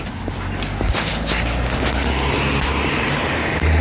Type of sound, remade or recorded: recorded